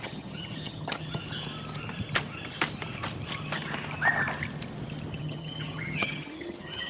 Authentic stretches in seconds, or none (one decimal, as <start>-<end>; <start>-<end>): 1.2-5.2

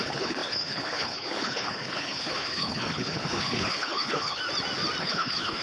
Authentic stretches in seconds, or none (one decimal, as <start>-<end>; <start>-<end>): 4.4-5.0